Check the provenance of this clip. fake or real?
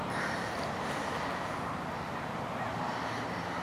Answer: real